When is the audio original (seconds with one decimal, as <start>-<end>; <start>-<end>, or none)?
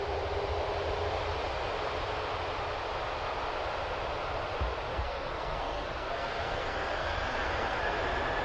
0.0-4.9; 8.0-8.4